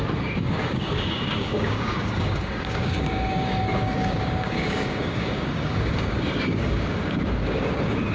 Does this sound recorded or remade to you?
remade